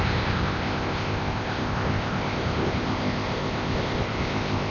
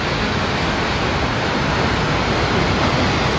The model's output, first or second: first